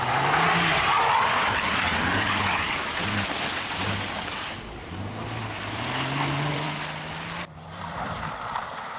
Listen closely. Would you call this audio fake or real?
fake